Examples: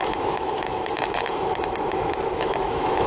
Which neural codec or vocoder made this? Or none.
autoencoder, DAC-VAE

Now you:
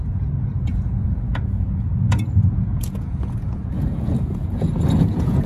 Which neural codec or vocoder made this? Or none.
vocoder, Vocos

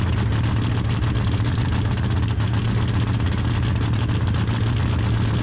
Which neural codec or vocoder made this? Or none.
none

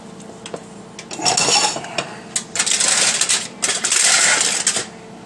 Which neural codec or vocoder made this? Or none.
none